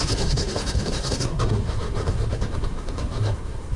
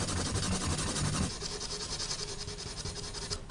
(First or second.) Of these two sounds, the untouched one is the second